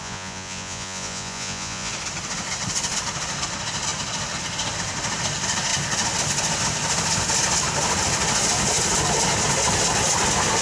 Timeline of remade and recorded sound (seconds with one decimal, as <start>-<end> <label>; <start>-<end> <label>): 0.0-1.9 remade; 1.9-10.6 recorded